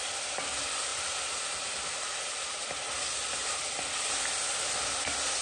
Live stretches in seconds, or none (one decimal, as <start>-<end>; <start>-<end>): 0.0-5.4